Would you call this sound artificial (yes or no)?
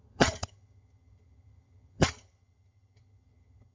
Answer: yes